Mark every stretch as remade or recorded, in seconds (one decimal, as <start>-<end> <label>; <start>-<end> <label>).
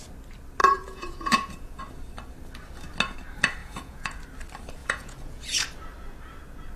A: 0.0-0.6 recorded; 0.6-1.8 remade; 1.8-3.6 recorded; 3.6-4.2 remade; 4.2-4.8 recorded; 4.8-5.4 remade; 5.4-6.8 recorded